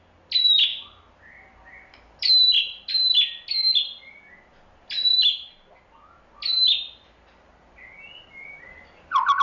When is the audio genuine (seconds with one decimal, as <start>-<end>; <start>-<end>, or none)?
0.0-9.4